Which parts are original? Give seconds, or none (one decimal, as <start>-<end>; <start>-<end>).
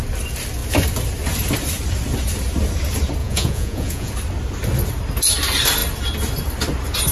0.0-3.2; 4.1-7.1